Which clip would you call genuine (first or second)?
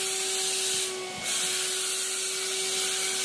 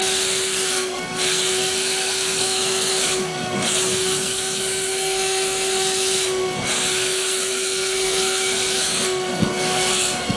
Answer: first